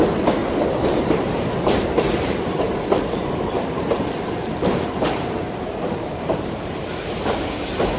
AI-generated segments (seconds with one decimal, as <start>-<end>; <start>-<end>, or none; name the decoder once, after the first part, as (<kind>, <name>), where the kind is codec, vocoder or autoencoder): 0.0-0.4 (vocoder, BigVGAN v2); 0.9-8.0